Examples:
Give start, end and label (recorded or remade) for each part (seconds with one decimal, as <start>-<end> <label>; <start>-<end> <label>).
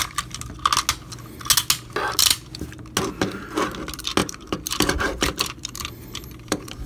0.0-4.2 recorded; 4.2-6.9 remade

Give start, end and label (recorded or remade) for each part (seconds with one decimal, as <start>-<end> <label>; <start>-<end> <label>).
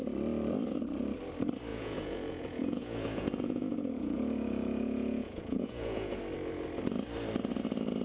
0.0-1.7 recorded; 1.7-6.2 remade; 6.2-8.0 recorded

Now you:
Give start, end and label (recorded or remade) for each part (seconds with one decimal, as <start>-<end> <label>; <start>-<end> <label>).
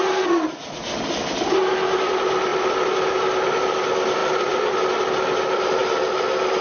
0.0-6.6 recorded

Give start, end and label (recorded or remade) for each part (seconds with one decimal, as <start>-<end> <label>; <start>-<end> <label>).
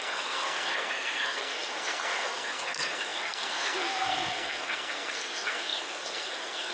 0.0-6.7 remade